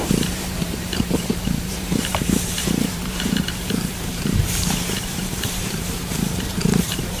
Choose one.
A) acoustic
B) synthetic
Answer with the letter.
B